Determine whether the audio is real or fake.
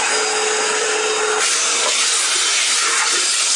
real